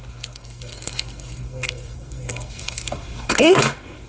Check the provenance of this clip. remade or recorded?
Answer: remade